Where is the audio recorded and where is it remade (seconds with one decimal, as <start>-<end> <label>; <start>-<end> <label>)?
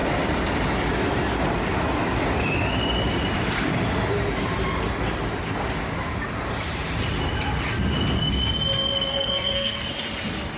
0.0-9.1 recorded; 9.1-9.9 remade; 9.9-10.6 recorded